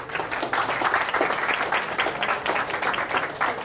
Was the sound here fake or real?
real